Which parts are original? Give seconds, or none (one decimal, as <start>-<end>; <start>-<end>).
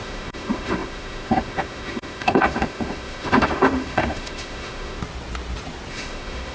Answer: 5.0-5.9